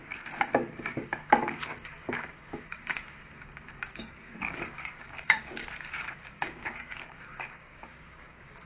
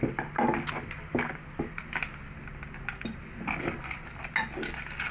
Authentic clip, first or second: second